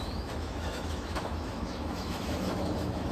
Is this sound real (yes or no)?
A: no